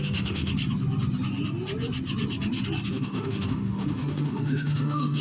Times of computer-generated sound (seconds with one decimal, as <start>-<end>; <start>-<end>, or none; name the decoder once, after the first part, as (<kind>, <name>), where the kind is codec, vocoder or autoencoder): 0.0-0.5 (autoencoder, DAC-VAE); 2.9-5.2